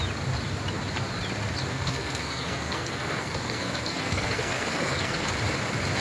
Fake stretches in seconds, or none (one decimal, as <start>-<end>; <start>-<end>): 1.7-5.3